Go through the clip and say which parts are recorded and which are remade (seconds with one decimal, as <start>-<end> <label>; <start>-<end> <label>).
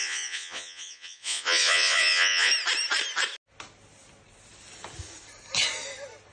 0.0-2.5 remade; 2.5-6.3 recorded